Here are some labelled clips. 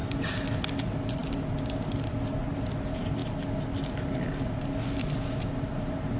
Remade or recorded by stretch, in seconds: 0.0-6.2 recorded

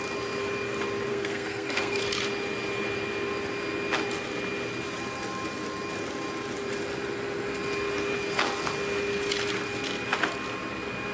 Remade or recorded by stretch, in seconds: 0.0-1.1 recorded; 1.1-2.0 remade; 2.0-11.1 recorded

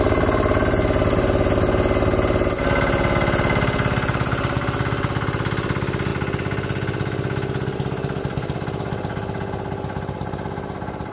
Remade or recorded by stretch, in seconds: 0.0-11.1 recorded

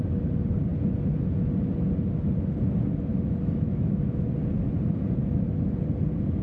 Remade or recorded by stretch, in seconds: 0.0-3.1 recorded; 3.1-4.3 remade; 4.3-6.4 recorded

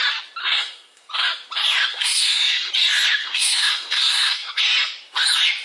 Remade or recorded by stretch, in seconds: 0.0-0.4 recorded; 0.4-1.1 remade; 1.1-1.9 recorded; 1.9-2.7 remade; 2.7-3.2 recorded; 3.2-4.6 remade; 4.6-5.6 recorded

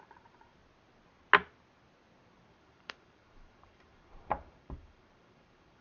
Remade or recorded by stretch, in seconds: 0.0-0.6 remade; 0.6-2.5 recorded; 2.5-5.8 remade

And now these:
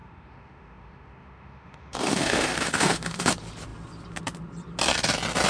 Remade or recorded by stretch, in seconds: 0.0-3.3 remade; 3.3-5.5 recorded